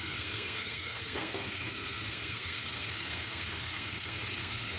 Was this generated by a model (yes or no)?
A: yes